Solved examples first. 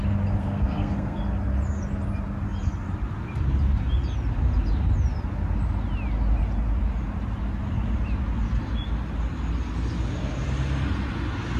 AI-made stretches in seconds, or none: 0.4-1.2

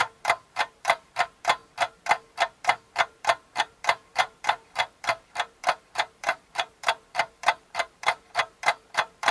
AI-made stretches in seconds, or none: 0.0-1.6; 2.6-9.3

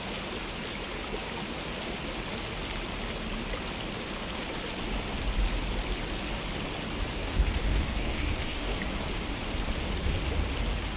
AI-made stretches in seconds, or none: 7.1-8.8